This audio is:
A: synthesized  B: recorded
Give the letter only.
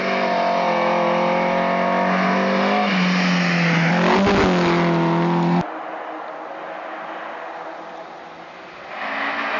B